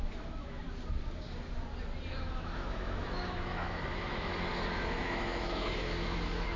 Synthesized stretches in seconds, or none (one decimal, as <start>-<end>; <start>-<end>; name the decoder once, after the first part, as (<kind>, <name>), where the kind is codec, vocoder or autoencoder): 0.0-0.6 (autoencoder, DAC-VAE); 2.1-6.6